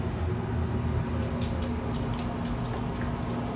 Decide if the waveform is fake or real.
real